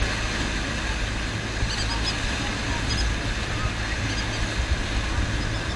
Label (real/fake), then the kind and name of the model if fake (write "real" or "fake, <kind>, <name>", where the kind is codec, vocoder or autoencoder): real